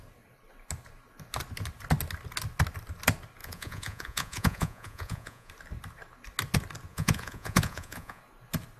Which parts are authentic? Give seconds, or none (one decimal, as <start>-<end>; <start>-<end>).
0.0-3.4; 5.5-6.9; 8.2-8.8